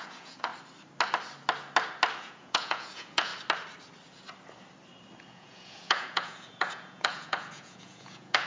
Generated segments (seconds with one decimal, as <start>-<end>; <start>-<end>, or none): 0.0-0.5; 2.2-3.3; 5.2-8.5